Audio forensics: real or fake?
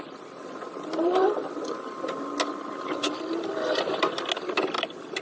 real